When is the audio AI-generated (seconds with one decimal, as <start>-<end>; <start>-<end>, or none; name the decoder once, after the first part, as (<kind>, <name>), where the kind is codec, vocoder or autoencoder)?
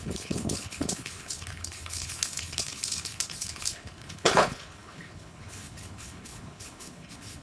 0.0-7.4 (codec, HILCodec)